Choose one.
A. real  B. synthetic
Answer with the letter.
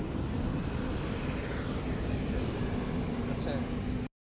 A